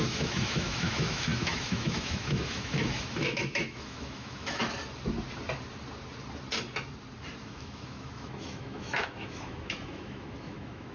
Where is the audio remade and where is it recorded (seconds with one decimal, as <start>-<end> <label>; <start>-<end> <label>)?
0.0-4.6 remade; 4.6-7.4 recorded; 7.4-10.9 remade